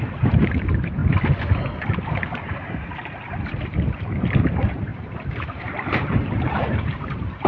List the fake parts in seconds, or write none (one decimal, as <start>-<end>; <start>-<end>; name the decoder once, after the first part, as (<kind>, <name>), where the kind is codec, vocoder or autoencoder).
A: 0.0-1.0 (vocoder, BigVGAN v2); 1.9-4.9; 5.6-7.5

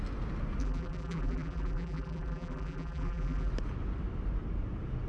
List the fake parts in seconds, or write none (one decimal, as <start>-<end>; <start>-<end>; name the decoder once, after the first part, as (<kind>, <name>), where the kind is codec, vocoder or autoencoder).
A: 0.6-3.5 (vocoder, BigVGAN v2)